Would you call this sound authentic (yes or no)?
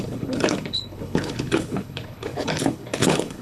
no